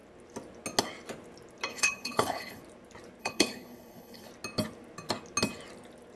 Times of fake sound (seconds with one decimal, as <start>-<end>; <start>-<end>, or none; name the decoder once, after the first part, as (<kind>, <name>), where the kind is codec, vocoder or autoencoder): 1.7-2.6 (codec, HILCodec); 3.2-4.3